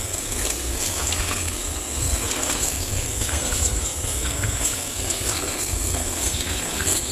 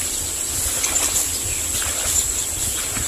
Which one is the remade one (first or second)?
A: first